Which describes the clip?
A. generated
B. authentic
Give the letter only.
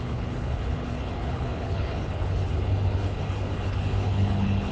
A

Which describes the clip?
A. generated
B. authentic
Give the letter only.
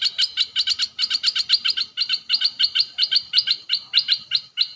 B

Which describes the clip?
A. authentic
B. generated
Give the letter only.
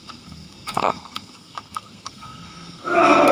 B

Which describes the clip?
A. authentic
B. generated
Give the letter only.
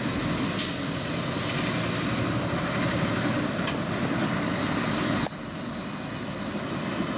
A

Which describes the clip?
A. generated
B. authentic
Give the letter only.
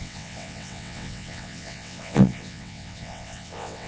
A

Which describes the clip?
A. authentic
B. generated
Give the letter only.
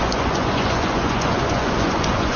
B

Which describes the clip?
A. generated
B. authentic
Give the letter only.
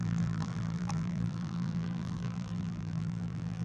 A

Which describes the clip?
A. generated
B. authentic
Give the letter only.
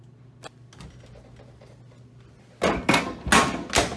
B